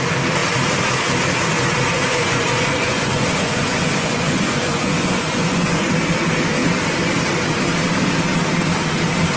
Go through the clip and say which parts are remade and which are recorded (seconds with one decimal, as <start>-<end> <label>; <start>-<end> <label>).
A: 0.0-1.9 recorded; 1.9-5.9 remade; 5.9-9.4 recorded